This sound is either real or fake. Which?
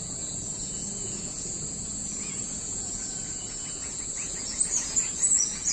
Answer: fake